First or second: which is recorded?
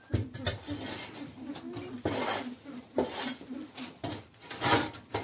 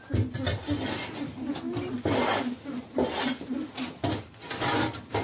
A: second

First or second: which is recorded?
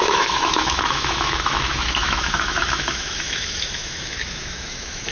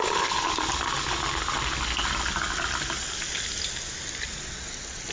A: second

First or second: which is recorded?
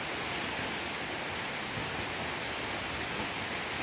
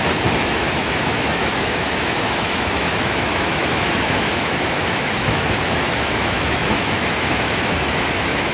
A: first